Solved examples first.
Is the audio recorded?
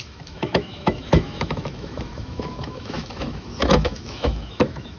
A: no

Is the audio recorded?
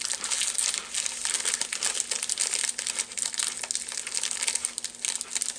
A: yes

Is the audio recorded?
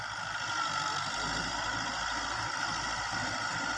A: yes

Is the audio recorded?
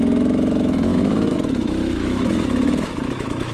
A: no